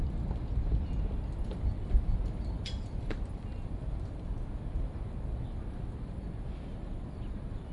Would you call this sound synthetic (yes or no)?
yes